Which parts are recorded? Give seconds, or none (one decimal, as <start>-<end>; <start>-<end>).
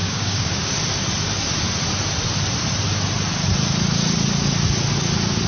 0.7-5.5